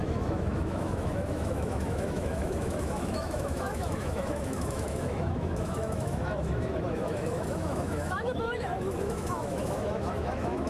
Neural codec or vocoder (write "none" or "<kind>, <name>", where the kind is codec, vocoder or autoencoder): autoencoder, DAC-VAE